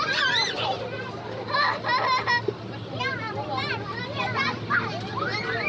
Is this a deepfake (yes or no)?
no